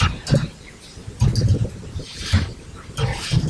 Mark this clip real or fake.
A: real